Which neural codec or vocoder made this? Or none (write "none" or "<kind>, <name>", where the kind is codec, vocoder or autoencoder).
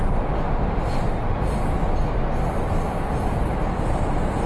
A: none